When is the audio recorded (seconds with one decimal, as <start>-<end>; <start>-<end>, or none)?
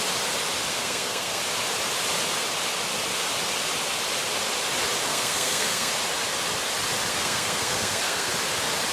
0.0-0.7; 1.4-5.1; 5.9-7.1; 8.3-8.9